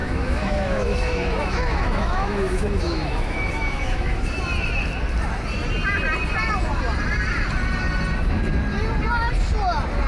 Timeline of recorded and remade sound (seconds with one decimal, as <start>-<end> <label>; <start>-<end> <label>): 0.0-4.4 remade; 4.4-10.1 recorded